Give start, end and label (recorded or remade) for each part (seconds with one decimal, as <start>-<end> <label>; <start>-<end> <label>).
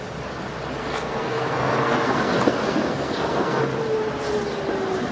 0.0-0.8 recorded; 0.8-3.6 remade; 3.6-5.1 recorded